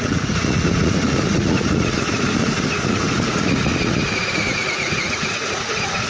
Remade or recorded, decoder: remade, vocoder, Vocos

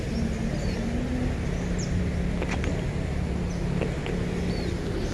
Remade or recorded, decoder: recorded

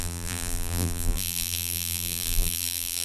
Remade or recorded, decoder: remade, vocoder, BigVGAN v2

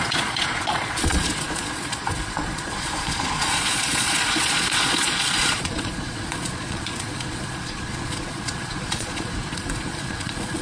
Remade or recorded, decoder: remade, vocoder, Vocos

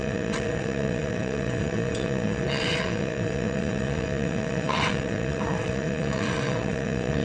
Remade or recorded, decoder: remade, vocoder, WaveNeXt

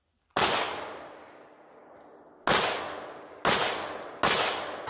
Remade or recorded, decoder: recorded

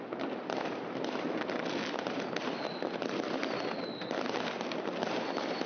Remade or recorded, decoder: recorded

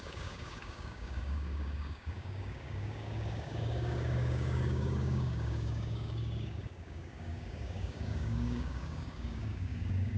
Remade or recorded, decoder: remade, codec, DAC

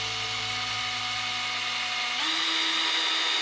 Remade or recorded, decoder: recorded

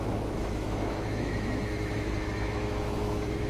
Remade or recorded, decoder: remade, autoencoder, DAC-VAE